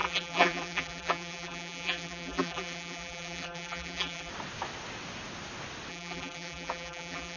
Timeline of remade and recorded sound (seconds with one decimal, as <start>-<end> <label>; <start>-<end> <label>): 0.0-4.3 remade; 4.3-5.9 recorded; 5.9-7.4 remade

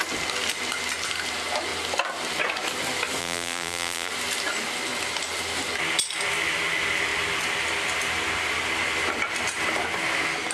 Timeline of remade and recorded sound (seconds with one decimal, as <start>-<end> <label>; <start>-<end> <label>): 0.0-3.2 recorded; 3.2-4.1 remade; 4.1-10.5 recorded

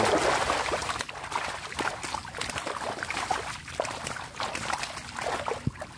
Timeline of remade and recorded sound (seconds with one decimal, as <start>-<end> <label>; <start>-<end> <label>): 0.0-0.8 recorded; 0.8-4.4 remade; 4.4-6.0 recorded

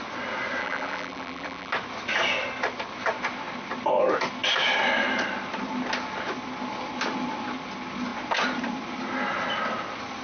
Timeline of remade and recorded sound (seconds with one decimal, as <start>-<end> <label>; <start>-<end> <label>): 0.0-0.6 recorded; 0.6-1.7 remade; 1.7-10.2 recorded

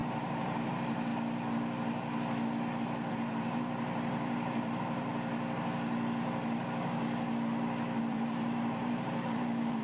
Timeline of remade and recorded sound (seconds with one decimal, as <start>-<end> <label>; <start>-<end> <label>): 0.0-1.1 remade; 1.1-3.1 recorded; 3.1-5.1 remade; 5.1-8.0 recorded; 8.0-9.8 remade

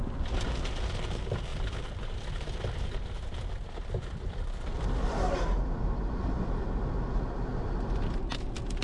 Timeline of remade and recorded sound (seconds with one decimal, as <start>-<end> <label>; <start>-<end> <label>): 0.0-1.5 recorded; 1.5-5.2 remade; 5.2-8.8 recorded

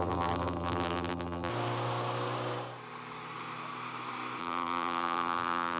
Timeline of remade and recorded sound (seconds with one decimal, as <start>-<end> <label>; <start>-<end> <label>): 0.0-1.5 remade; 1.5-4.4 recorded; 4.4-5.8 remade

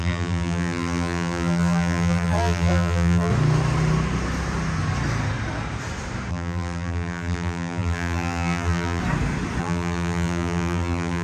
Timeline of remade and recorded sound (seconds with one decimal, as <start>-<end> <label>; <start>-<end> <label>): 0.0-3.3 remade; 3.3-6.3 recorded; 6.3-9.0 remade; 9.0-9.6 recorded; 9.6-11.2 remade